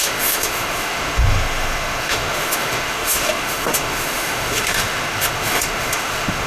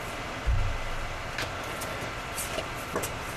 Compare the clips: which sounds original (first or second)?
second